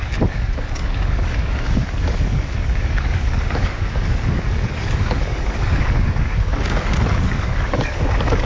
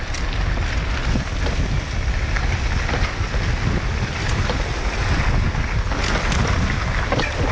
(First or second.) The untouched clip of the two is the second